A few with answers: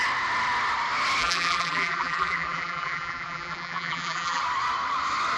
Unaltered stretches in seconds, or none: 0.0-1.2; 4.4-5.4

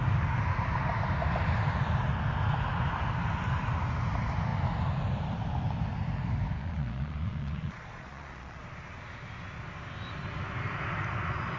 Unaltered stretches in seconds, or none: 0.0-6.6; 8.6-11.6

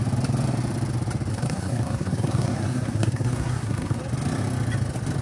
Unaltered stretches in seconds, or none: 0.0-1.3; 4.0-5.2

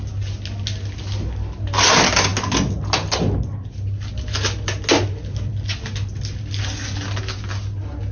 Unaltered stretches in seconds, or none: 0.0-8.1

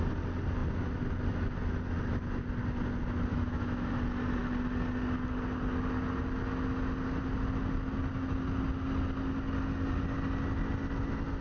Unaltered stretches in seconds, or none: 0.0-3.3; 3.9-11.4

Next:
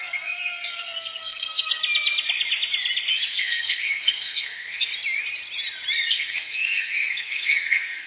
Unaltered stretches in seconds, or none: 1.8-3.3; 4.9-6.1